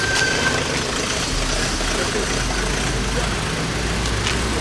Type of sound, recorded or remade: recorded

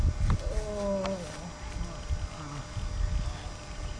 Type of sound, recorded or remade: recorded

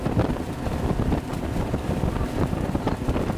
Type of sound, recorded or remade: remade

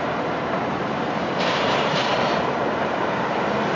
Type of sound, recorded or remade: remade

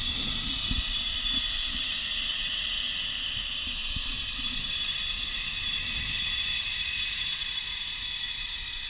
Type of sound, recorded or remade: remade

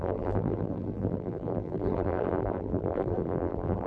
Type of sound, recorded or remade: remade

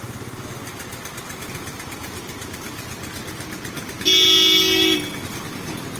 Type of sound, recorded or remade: recorded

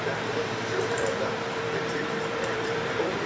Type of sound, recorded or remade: remade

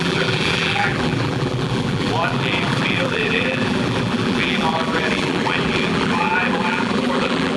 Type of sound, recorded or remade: remade